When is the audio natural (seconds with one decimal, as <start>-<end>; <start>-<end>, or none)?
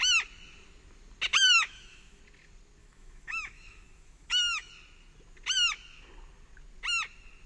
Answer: 0.0-1.3; 2.2-2.8; 4.7-7.5